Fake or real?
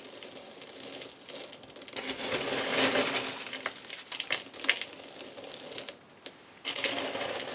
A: real